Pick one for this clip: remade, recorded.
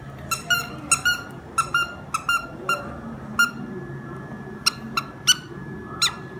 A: recorded